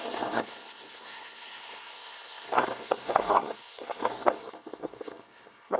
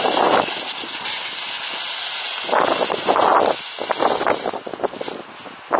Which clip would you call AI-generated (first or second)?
first